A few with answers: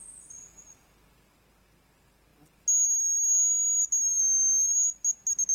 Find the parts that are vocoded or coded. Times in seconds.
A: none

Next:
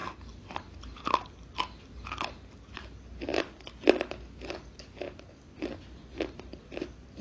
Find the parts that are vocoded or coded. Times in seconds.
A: none

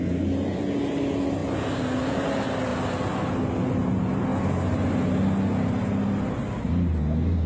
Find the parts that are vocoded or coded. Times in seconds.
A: none

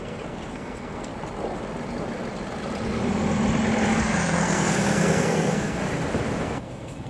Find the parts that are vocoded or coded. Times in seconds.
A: 0.0-1.1 (codec, SNAC); 4.0-5.8; 6.4-7.1

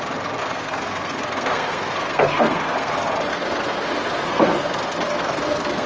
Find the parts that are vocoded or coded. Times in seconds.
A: 0.4-2.9 (codec, SNAC); 3.3-5.9

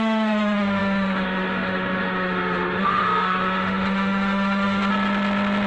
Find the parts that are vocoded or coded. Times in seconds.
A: 0.0-4.9 (autoencoder, DAC-VAE)